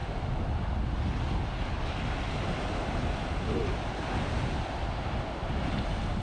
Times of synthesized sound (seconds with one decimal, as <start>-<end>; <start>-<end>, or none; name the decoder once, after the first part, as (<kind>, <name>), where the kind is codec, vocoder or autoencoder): none